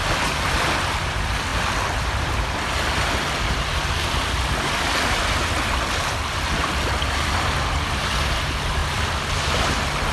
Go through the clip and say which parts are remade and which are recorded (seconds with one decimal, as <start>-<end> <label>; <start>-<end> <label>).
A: 0.0-10.1 recorded